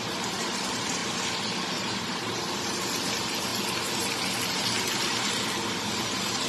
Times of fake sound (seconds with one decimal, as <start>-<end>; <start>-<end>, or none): 0.0-1.0; 1.8-3.5; 5.8-6.5